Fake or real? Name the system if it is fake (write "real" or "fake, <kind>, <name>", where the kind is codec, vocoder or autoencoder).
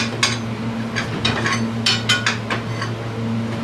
real